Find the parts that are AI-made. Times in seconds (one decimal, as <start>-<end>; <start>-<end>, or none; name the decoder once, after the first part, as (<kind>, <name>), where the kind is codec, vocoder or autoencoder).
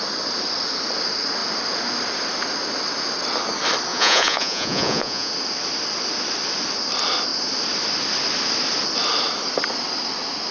3.9-5.3 (vocoder, Vocos)